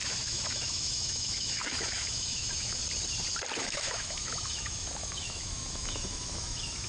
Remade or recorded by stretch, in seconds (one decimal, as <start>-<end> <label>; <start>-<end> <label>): 0.0-2.8 remade; 2.8-3.6 recorded; 3.6-6.9 remade